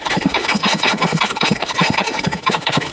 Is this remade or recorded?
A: remade